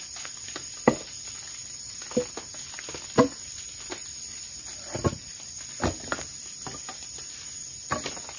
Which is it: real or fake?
real